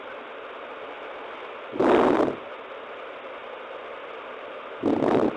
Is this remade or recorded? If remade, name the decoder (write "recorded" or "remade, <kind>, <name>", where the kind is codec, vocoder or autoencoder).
recorded